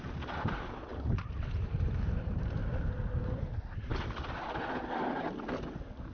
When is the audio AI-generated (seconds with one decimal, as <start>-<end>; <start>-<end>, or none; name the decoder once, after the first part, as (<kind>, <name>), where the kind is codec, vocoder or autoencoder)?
none